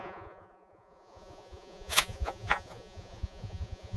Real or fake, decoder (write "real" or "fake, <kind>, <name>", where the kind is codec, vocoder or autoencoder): fake, vocoder, Vocos